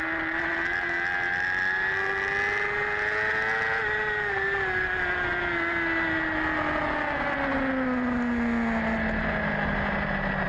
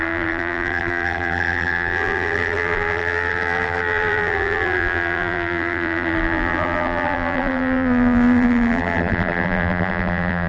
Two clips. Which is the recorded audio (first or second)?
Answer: first